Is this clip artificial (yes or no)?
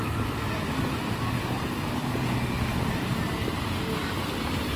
no